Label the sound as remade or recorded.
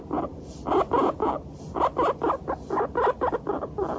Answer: recorded